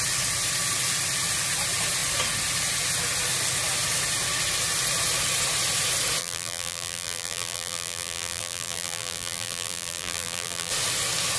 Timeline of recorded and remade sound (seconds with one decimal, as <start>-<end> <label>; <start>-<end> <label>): 0.0-6.2 recorded; 6.2-10.7 remade; 10.7-11.4 recorded